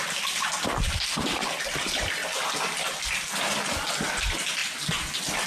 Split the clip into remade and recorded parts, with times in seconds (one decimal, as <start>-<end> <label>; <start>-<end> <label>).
0.0-5.5 recorded